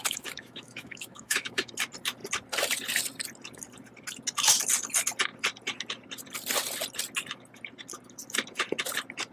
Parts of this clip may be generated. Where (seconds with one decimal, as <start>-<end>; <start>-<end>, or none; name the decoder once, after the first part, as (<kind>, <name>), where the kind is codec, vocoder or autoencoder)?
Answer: 0.0-1.7 (autoencoder, DAC-VAE)